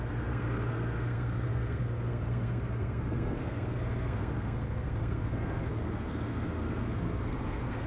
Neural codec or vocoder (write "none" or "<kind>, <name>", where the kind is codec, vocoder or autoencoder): codec, SNAC